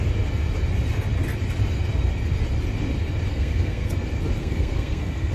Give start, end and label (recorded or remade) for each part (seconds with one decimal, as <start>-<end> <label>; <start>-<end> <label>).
0.0-3.3 recorded; 3.3-3.9 remade; 3.9-4.4 recorded; 4.4-5.3 remade